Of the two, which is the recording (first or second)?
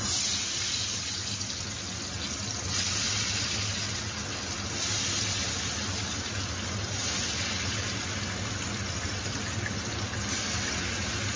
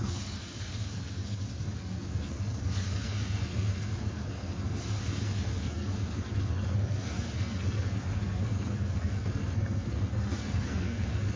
first